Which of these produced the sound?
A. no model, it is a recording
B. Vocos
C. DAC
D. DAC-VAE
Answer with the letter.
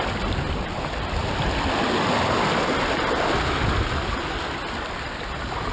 A